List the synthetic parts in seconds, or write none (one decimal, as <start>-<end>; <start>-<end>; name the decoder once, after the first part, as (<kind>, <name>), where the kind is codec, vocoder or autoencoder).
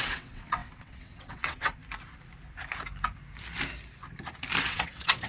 0.0-1.8 (vocoder, WaveNeXt); 4.6-5.3